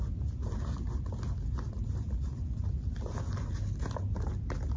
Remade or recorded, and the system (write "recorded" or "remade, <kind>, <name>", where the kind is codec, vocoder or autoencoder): recorded